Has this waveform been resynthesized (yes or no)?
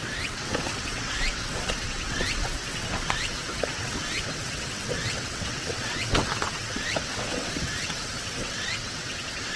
yes